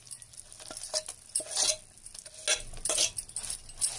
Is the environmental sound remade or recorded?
recorded